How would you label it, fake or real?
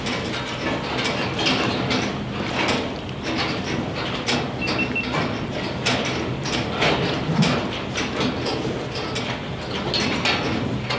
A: real